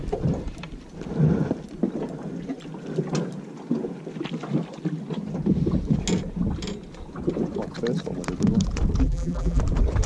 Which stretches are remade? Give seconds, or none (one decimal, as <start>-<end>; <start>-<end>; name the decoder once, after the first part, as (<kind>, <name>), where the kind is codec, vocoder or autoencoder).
9.0-9.6 (vocoder, BigVGAN v2)